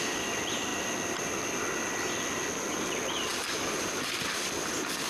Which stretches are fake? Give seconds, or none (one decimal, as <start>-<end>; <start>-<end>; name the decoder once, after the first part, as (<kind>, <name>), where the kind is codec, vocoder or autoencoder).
3.3-3.9 (vocoder, BigVGAN v2)

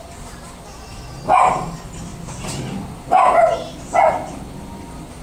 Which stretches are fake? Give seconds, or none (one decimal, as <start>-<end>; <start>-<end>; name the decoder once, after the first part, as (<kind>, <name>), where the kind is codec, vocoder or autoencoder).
none

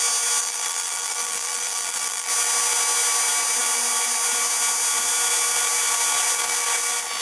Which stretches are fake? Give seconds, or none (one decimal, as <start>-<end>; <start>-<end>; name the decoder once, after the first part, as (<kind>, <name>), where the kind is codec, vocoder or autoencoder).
0.4-2.3 (vocoder, BigVGAN v2)